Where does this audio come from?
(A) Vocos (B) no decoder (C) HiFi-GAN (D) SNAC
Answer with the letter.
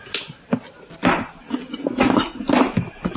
B